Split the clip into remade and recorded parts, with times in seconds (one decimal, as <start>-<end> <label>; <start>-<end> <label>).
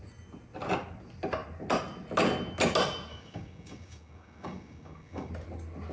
0.0-3.1 recorded; 3.1-5.3 remade; 5.3-5.9 recorded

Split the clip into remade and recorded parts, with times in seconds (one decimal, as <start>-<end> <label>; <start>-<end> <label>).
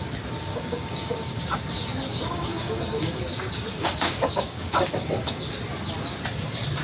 0.0-0.5 recorded; 0.5-1.4 remade; 1.4-2.1 recorded; 2.1-3.2 remade; 3.2-3.7 recorded; 3.7-5.5 remade; 5.5-6.8 recorded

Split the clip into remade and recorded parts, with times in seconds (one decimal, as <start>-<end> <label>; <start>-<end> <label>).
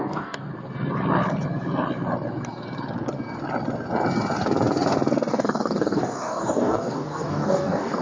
0.0-0.5 remade; 0.5-5.3 recorded; 5.3-8.0 remade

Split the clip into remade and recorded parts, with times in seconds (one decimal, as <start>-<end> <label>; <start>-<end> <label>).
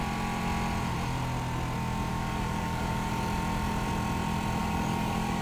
0.0-2.1 recorded; 2.1-3.1 remade; 3.1-4.6 recorded; 4.6-5.4 remade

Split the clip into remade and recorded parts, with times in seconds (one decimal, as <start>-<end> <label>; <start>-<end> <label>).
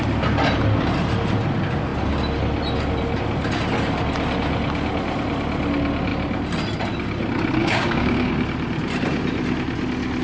0.0-7.6 recorded; 7.6-8.3 remade; 8.3-10.2 recorded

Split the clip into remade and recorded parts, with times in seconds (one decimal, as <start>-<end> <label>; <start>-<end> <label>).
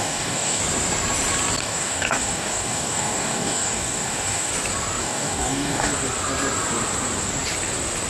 0.0-0.6 remade; 0.6-1.6 recorded; 1.6-4.5 remade; 4.5-5.0 recorded; 5.0-5.9 remade; 5.9-8.1 recorded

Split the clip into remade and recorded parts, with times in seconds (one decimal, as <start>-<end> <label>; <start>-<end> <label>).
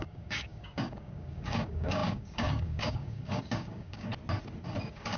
0.0-4.1 remade; 4.1-4.8 recorded; 4.8-5.2 remade